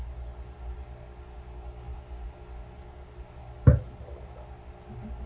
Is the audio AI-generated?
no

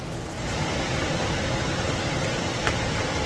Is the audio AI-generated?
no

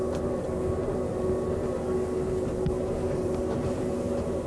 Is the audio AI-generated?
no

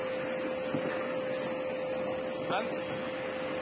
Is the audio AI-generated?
no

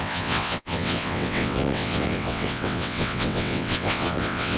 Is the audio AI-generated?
yes